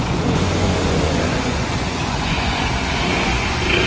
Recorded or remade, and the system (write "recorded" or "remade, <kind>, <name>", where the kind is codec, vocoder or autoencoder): remade, vocoder, Vocos